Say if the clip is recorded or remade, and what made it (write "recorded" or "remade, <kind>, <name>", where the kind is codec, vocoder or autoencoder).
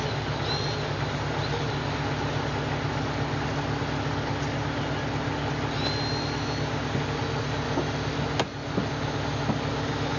recorded